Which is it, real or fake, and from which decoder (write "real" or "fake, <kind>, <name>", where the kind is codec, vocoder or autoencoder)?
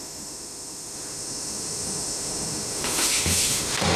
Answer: fake, autoencoder, DAC-VAE